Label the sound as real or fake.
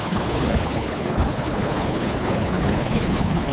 fake